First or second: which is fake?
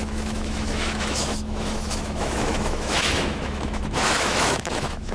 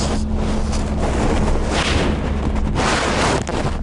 first